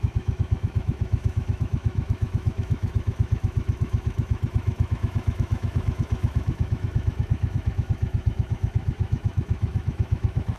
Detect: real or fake fake